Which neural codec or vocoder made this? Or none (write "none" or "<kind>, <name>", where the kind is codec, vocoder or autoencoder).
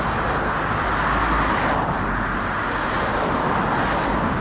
none